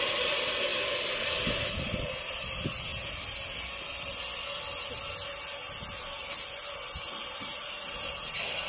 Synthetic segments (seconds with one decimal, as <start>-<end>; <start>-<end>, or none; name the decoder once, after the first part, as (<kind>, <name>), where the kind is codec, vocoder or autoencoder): 0.0-0.7 (vocoder, BigVGAN v2); 1.2-2.9; 7.8-8.7

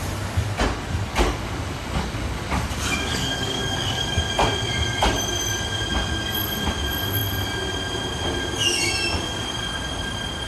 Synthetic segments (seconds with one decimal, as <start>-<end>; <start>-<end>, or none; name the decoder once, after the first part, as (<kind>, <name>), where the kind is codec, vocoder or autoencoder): 1.1-4.2 (codec, DAC)

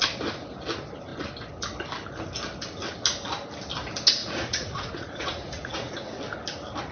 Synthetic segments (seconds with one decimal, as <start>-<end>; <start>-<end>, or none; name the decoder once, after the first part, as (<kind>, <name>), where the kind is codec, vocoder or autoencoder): 4.2-6.2 (vocoder, Vocos)

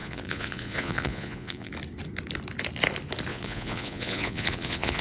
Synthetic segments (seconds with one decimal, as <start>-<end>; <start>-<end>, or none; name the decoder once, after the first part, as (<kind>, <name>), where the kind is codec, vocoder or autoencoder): 0.0-1.7 (vocoder, Vocos); 3.3-5.0

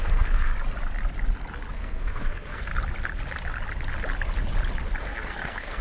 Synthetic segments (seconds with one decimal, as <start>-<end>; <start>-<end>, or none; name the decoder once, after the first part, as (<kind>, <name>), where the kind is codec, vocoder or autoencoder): 0.0-0.5 (codec, SNAC); 1.7-2.7; 5.0-5.8